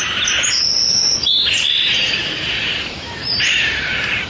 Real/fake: real